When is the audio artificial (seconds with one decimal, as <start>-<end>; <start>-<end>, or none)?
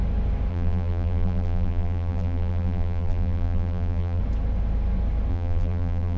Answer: 0.5-4.2; 5.3-6.2